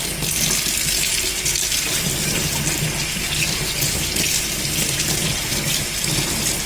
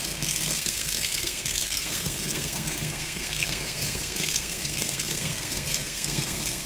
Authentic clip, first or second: first